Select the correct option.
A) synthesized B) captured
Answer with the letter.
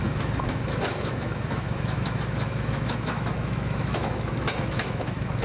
A